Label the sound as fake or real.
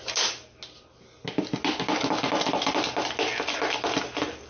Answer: real